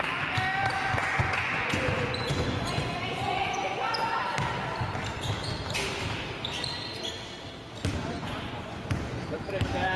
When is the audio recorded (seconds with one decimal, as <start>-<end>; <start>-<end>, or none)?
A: 0.0-1.0; 4.2-8.0; 9.5-10.0